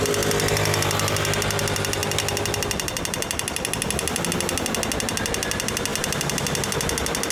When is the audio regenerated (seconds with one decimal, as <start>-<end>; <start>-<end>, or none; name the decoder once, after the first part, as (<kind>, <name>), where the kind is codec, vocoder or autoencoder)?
none